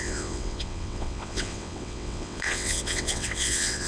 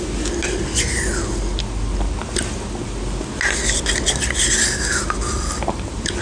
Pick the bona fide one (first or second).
second